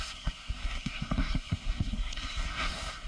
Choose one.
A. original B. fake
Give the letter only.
B